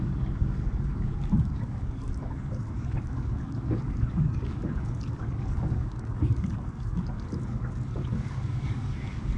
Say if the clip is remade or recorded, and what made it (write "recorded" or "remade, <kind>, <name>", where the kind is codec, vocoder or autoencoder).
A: remade, codec, DAC